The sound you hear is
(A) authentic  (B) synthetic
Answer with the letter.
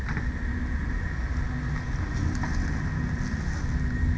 A